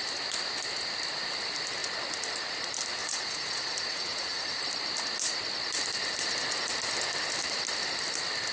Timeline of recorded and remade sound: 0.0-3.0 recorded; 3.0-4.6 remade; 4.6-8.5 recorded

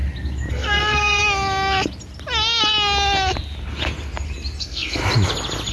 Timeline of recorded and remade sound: 0.0-0.5 recorded; 0.5-1.2 remade; 1.2-4.6 recorded; 4.6-5.0 remade; 5.0-5.7 recorded

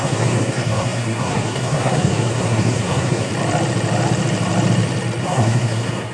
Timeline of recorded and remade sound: 0.0-3.3 remade; 3.3-5.2 recorded; 5.2-6.1 remade

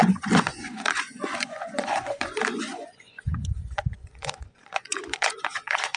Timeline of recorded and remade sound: 0.0-6.0 remade

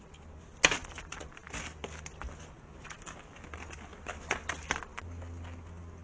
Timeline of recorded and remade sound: 0.0-6.0 recorded

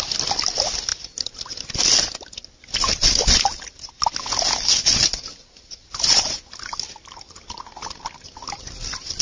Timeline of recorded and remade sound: 0.0-9.2 recorded

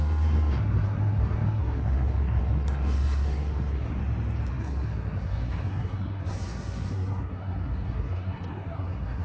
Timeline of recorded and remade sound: 0.0-4.0 remade; 4.0-4.5 recorded; 4.5-9.2 remade